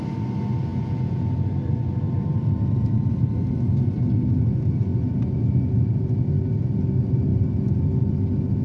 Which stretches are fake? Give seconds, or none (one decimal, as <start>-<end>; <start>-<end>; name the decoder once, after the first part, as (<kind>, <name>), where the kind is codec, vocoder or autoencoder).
0.7-1.3 (vocoder, Vocos)